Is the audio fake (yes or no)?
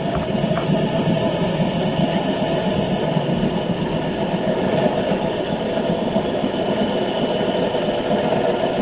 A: no